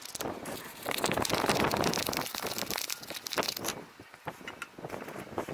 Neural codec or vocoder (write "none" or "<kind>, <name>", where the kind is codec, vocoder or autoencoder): none